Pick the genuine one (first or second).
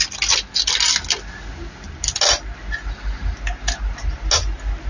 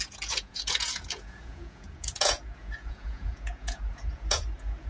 first